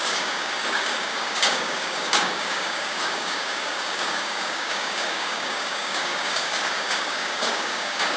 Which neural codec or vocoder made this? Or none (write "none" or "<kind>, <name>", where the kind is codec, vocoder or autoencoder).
codec, DAC